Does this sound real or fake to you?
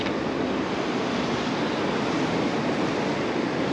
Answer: real